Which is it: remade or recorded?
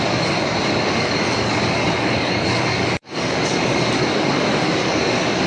remade